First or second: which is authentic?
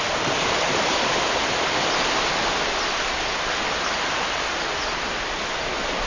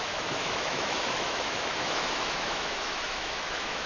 first